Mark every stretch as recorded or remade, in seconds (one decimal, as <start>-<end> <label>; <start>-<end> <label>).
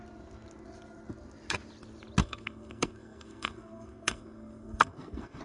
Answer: 0.0-2.2 recorded; 2.2-5.4 remade